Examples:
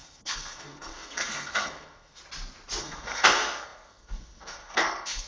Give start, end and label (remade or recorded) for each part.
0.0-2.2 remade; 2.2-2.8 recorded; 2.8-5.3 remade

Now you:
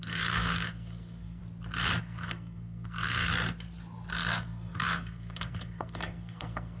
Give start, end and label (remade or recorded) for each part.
0.0-1.4 remade; 1.4-2.0 recorded; 2.0-3.3 remade; 3.3-4.1 recorded; 4.1-6.8 remade

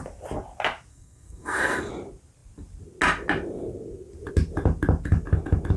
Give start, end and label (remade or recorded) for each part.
0.0-0.9 recorded; 0.9-1.9 remade; 1.9-5.8 recorded

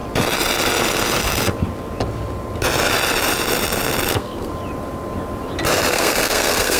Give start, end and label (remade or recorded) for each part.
0.0-4.1 recorded; 4.1-4.5 remade; 4.5-5.9 recorded; 5.9-6.8 remade

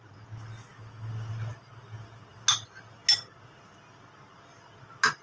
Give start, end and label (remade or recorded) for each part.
0.0-5.2 recorded

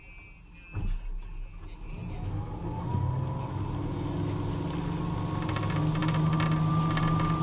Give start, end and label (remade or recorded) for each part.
0.0-7.4 recorded

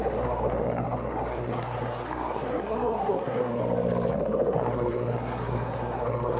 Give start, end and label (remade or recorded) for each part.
0.0-3.6 remade; 3.6-4.1 recorded; 4.1-6.4 remade

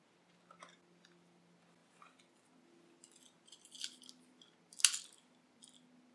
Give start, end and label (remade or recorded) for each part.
0.0-6.1 recorded